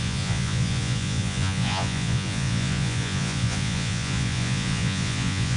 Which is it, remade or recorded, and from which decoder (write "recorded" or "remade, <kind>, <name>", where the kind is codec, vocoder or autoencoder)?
remade, vocoder, Vocos